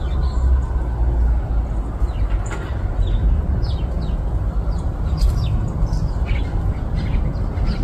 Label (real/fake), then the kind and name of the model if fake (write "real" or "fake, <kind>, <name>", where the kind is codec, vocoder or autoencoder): real